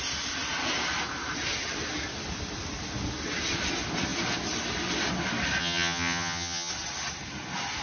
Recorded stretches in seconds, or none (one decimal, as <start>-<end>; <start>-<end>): 0.0-5.6; 6.7-7.8